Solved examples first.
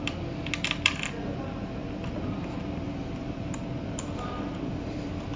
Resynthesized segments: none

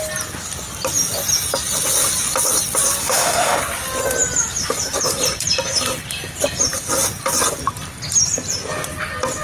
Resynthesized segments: 3.0-3.6 (autoencoder, DAC-VAE)

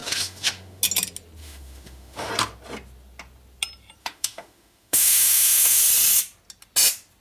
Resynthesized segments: 0.0-0.8 (autoencoder, DAC-VAE); 1.4-2.3; 4.0-5.8

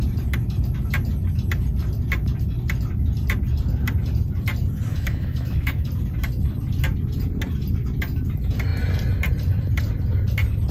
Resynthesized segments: 4.9-5.9 (autoencoder, DAC-VAE)

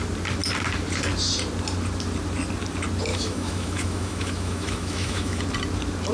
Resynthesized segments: 3.1-5.4 (autoencoder, DAC-VAE)

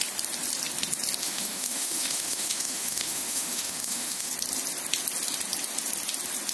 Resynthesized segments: 1.2-4.3 (autoencoder, DAC-VAE)

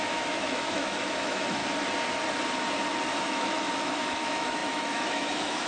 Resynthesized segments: 0.0-1.6 (autoencoder, DAC-VAE); 3.2-5.7